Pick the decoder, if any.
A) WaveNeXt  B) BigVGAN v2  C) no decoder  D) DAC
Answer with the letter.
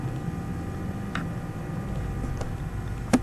C